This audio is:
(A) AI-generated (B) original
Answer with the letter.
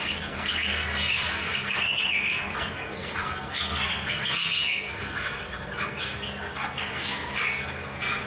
A